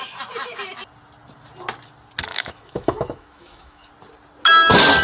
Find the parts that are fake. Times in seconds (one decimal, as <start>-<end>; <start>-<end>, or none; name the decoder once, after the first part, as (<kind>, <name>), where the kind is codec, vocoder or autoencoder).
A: 2.3-3.9 (autoencoder, DAC-VAE)